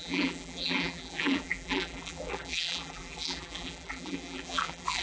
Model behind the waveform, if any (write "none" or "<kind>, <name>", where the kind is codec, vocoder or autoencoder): vocoder, BigVGAN v2